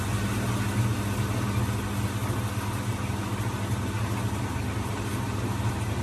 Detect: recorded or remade recorded